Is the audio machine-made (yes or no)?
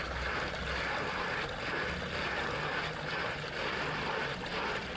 no